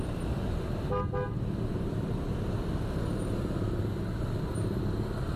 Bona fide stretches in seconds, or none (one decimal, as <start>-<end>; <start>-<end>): 0.0-5.4